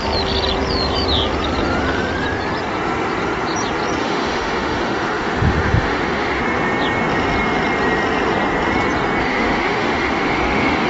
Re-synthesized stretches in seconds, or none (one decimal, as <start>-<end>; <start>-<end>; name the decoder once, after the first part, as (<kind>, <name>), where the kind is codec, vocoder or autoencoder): 4.0-6.4 (autoencoder, DAC-VAE); 9.2-10.9